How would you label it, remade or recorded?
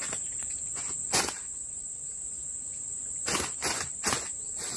remade